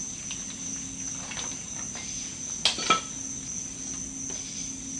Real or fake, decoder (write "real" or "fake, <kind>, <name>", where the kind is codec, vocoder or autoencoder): real